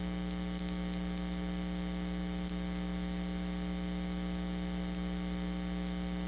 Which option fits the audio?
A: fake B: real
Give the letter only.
B